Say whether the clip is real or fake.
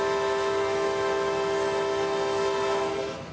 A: real